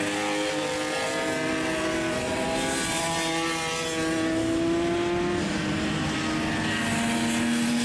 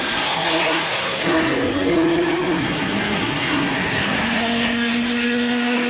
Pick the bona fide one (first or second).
first